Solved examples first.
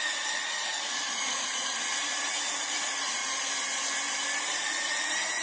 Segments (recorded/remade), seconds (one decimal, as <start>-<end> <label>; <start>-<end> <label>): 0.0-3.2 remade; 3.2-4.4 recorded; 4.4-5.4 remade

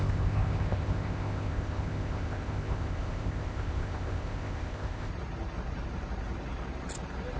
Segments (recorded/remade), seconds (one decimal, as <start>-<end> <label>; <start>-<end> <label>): 0.0-5.1 remade; 5.1-7.4 recorded

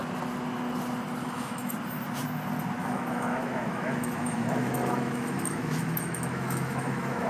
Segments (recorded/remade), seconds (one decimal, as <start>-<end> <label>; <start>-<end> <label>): 0.0-1.2 recorded; 1.2-1.7 remade; 1.7-2.8 recorded; 2.8-7.3 remade